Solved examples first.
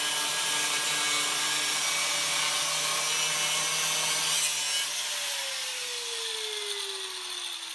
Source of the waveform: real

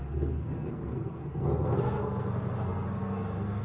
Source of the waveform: fake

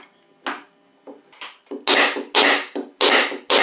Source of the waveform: real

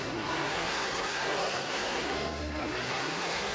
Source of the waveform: fake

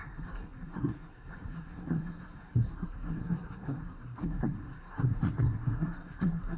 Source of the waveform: fake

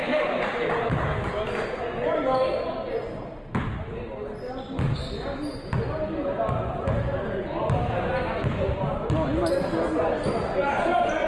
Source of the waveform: real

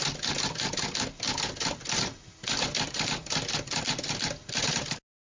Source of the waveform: real